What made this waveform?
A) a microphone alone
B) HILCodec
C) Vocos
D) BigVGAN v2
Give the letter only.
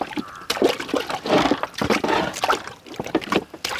D